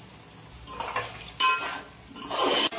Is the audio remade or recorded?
recorded